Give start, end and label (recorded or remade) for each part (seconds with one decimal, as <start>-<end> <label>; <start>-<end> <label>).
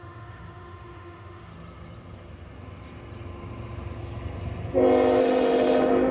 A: 0.0-1.5 remade; 1.5-5.2 recorded; 5.2-6.1 remade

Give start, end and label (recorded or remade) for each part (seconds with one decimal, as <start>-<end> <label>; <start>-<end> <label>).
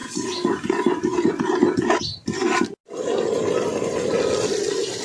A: 0.0-5.0 recorded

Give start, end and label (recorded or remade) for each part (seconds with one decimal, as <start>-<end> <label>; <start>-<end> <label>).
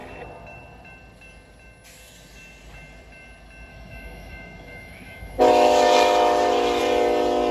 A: 0.0-3.7 recorded; 3.7-6.8 remade; 6.8-7.5 recorded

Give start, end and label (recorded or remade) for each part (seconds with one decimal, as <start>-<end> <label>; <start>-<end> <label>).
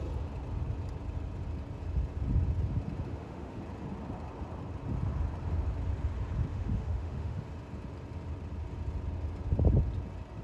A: 0.0-3.1 recorded; 3.1-3.6 remade; 3.6-6.5 recorded; 6.5-7.4 remade; 7.4-10.4 recorded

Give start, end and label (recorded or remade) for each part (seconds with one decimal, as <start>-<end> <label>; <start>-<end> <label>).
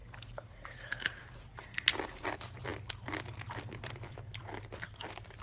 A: 0.0-5.4 recorded